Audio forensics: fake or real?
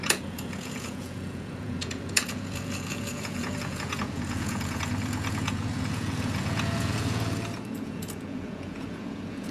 fake